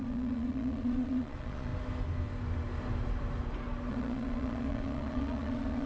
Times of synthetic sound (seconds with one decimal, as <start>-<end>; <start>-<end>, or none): 0.0-1.7; 3.9-5.9